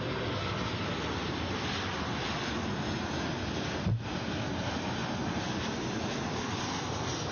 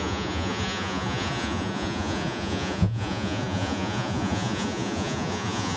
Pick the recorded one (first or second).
first